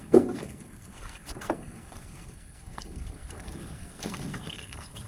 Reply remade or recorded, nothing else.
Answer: remade